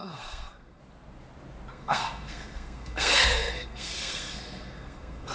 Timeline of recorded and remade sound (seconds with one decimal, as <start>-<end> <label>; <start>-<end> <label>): 0.0-0.8 remade; 0.8-1.7 recorded; 1.7-5.3 remade